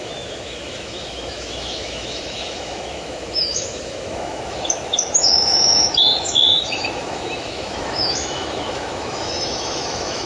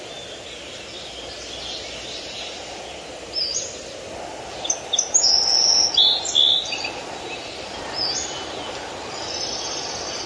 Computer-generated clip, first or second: first